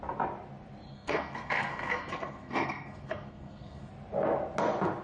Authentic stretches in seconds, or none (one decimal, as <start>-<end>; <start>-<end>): 0.0-0.9; 3.9-5.0